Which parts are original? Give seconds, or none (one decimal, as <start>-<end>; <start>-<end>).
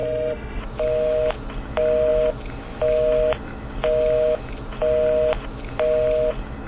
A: 0.6-6.7